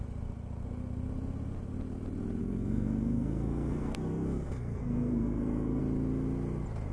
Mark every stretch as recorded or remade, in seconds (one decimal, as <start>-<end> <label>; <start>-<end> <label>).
0.0-2.4 recorded; 2.4-5.8 remade; 5.8-6.9 recorded